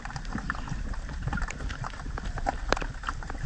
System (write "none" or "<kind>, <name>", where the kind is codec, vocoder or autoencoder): none